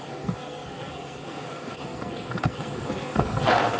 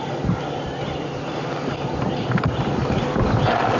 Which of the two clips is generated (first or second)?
first